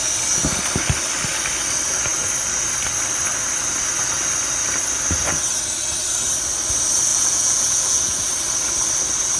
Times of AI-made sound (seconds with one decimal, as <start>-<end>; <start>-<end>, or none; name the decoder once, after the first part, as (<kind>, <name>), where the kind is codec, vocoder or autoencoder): 7.1-8.3 (vocoder, Vocos)